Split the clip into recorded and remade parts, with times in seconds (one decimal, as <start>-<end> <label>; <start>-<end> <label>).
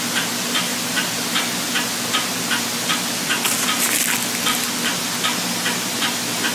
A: 0.0-6.5 recorded